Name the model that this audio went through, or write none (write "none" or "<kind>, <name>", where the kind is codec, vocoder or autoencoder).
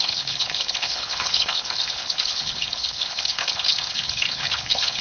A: codec, HILCodec